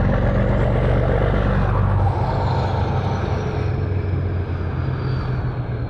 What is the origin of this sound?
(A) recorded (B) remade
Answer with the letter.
A